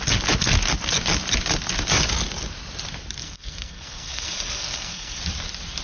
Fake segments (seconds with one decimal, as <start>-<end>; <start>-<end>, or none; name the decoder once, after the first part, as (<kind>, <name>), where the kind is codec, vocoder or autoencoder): 3.2-5.2 (codec, SNAC)